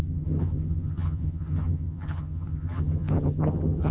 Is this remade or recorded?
remade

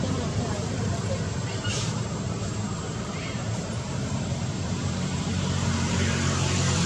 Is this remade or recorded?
remade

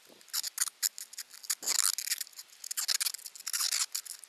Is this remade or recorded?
recorded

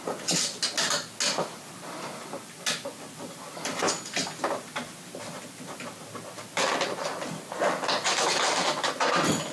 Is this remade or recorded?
recorded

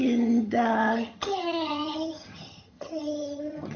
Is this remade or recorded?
remade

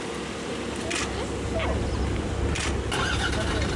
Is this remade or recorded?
recorded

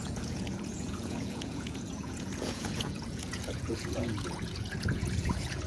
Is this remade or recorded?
remade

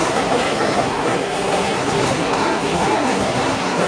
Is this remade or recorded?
remade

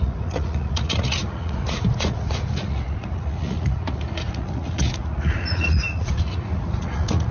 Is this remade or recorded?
remade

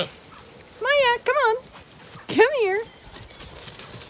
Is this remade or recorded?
recorded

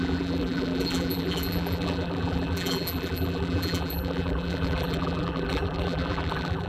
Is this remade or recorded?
remade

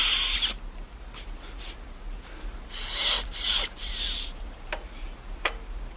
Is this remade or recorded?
recorded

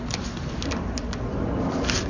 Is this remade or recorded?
recorded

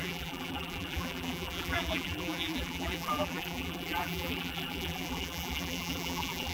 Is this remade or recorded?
remade